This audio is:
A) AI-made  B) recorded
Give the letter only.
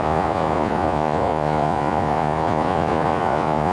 A